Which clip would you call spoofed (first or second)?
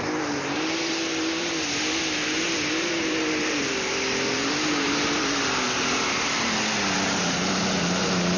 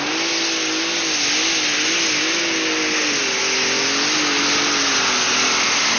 first